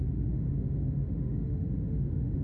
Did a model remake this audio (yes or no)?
yes